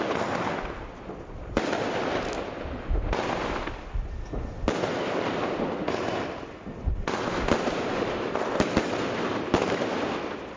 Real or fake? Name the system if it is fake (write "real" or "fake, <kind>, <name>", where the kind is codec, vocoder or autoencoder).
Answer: real